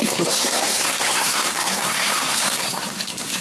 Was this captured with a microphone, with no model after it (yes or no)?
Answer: no